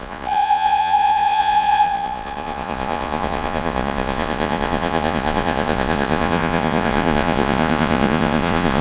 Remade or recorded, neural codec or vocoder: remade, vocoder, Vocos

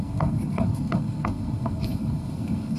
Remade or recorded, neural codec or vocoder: remade, codec, SNAC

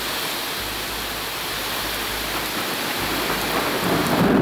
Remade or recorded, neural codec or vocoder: recorded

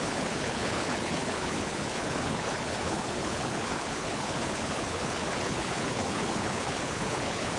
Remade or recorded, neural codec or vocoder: remade, codec, HILCodec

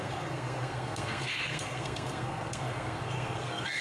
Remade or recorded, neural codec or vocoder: remade, codec, SNAC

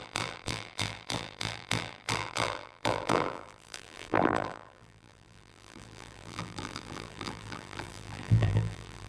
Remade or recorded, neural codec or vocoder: remade, vocoder, BigVGAN v2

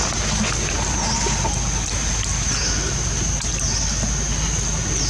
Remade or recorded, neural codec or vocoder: recorded